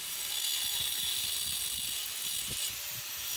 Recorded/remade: recorded